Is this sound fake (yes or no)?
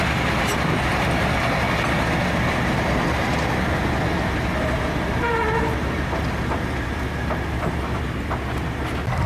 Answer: no